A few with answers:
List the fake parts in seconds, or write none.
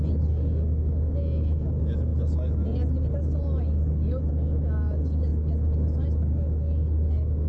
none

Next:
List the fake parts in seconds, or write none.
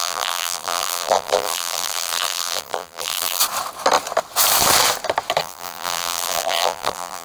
0.0-3.4 (vocoder, BigVGAN v2); 5.4-7.2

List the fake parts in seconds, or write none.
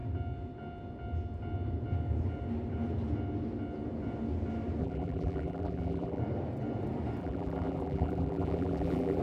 4.8-6.2 (vocoder, BigVGAN v2); 7.2-9.2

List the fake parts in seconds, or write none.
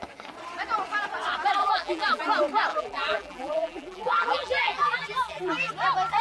1.6-2.2 (vocoder, BigVGAN v2); 2.7-5.7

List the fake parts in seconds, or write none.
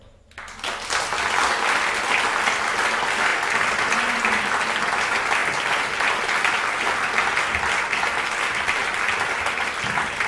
3.3-4.1 (vocoder, BigVGAN v2); 8.8-9.8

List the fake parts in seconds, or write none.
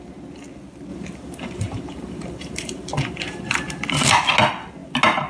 0.9-4.1 (vocoder, BigVGAN v2)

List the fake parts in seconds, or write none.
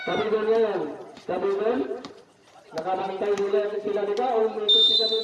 1.0-2.6 (vocoder, BigVGAN v2)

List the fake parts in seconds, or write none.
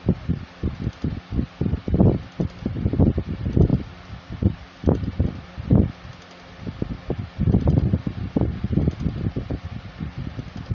3.7-5.9 (vocoder, BigVGAN v2)